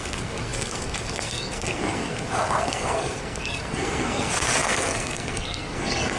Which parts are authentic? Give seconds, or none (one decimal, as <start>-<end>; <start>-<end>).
none